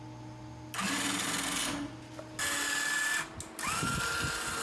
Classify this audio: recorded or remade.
recorded